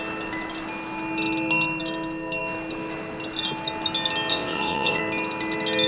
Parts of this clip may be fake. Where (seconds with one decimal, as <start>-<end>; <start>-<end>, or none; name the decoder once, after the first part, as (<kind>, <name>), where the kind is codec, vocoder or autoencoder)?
4.3-5.0 (vocoder, WaveNeXt)